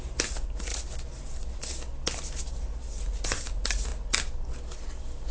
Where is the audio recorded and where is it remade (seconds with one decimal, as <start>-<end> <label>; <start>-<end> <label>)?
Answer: 0.0-5.3 recorded